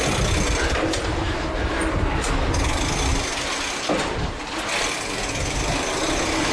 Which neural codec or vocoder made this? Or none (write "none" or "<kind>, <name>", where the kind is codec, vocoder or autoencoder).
none